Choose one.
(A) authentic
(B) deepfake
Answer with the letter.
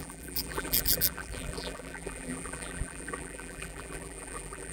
B